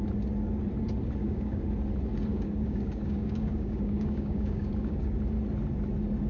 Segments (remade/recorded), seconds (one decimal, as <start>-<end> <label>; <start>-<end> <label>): 0.0-1.2 recorded; 1.2-1.7 remade; 1.7-2.3 recorded; 2.3-5.1 remade; 5.1-6.3 recorded